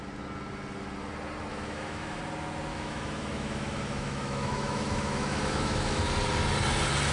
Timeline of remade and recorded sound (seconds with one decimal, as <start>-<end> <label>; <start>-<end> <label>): 0.0-1.5 recorded; 1.5-2.2 remade; 2.2-2.7 recorded; 2.7-6.1 remade; 6.1-7.1 recorded